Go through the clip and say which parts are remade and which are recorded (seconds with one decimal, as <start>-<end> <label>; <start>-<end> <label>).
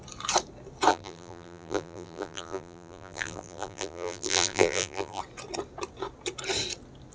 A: 0.0-0.9 recorded; 0.9-5.2 remade; 5.2-7.1 recorded